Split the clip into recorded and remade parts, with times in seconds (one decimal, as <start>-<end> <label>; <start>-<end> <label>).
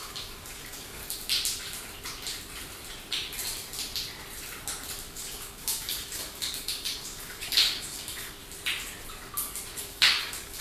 0.0-1.0 remade; 1.0-5.1 recorded; 5.1-8.4 remade; 8.4-9.8 recorded; 9.8-10.6 remade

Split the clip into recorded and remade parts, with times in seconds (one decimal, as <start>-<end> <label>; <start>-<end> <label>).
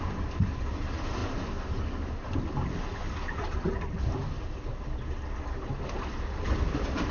0.0-7.1 recorded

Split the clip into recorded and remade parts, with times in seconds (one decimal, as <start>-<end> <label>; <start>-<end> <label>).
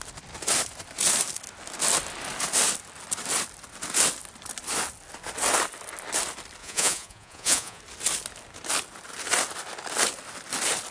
0.0-6.6 recorded; 6.6-7.8 remade; 7.8-10.9 recorded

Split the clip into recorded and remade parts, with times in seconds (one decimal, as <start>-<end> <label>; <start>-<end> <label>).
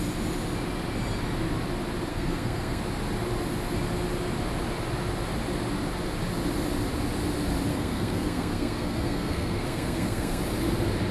0.0-2.1 recorded; 2.1-2.8 remade; 2.8-7.7 recorded; 7.7-10.4 remade; 10.4-11.1 recorded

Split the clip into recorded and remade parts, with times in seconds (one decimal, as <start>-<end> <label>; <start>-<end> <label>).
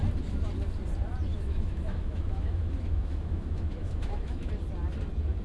0.0-1.3 recorded; 1.3-4.5 remade; 4.5-5.4 recorded